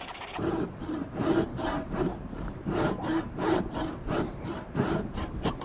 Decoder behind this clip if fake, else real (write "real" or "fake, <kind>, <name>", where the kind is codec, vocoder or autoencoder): fake, vocoder, BigVGAN v2